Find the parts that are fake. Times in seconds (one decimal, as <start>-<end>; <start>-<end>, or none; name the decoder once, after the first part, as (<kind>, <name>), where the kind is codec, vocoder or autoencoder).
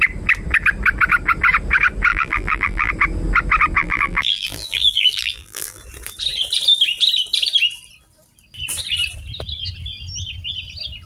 2.1-2.9 (vocoder, BigVGAN v2); 3.8-5.8